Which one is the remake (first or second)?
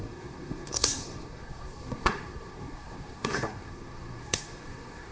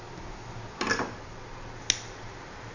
first